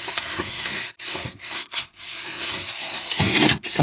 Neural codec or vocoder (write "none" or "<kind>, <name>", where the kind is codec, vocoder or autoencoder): codec, SNAC